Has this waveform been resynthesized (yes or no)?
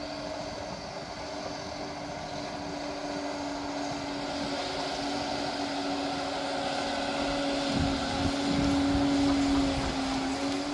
no